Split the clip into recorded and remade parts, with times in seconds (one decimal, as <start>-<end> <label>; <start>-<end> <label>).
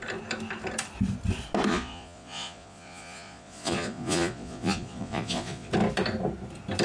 0.0-1.7 recorded; 1.7-5.7 remade; 5.7-6.8 recorded